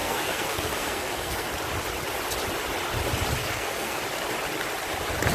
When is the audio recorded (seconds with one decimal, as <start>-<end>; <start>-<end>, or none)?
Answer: 1.5-3.4; 4.0-5.3